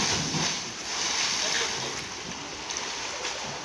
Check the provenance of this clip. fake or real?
real